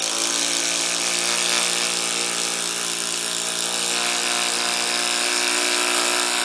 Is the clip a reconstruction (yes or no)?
no